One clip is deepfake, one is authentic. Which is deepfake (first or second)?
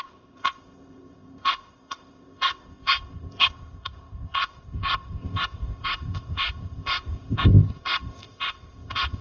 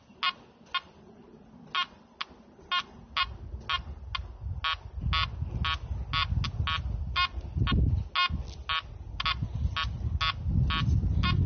first